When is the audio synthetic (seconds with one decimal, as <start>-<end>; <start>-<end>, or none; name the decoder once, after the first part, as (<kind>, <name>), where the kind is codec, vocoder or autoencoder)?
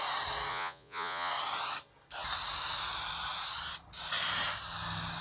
0.5-1.3 (vocoder, Vocos)